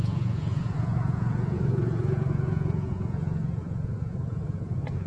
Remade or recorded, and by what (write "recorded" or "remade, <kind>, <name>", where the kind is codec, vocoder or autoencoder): remade, vocoder, Vocos